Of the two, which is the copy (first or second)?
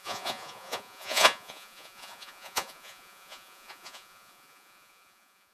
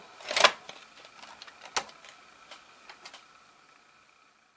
first